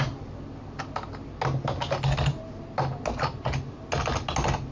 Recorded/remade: recorded